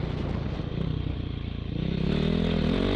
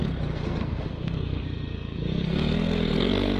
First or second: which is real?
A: first